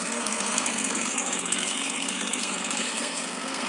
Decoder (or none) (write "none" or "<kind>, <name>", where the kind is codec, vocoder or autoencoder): codec, SNAC